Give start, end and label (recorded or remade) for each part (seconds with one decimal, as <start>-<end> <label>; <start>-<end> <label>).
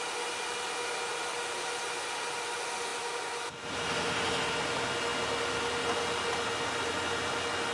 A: 0.0-7.7 recorded